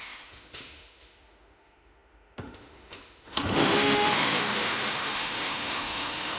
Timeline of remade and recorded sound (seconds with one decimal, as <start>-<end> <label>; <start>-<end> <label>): 0.0-6.4 remade